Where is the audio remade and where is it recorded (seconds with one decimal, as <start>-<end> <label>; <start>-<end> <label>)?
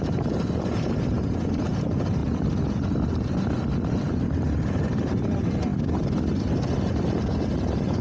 0.0-2.2 remade; 2.2-4.1 recorded; 4.1-5.7 remade; 5.7-7.2 recorded; 7.2-8.0 remade